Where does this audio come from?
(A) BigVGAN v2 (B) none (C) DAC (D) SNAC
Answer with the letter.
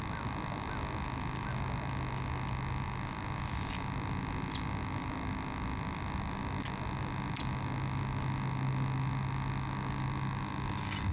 B